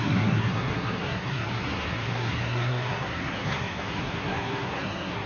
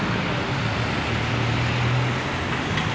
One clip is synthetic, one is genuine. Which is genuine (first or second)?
second